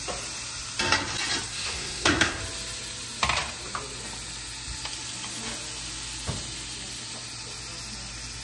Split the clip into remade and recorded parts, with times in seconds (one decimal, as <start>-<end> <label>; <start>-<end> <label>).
0.0-1.5 recorded; 1.5-2.4 remade; 2.4-8.4 recorded